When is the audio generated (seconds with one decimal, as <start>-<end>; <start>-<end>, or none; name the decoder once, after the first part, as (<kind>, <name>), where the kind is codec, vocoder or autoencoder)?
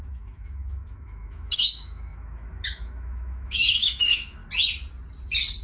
0.0-4.4 (autoencoder, DAC-VAE)